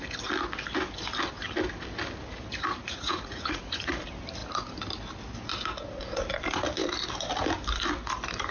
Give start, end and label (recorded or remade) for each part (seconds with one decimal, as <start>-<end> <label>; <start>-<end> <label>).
0.0-2.8 recorded; 2.8-4.0 remade; 4.0-8.5 recorded